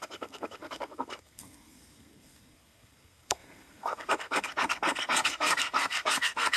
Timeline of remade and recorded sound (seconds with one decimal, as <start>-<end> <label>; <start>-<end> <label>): 0.0-6.6 remade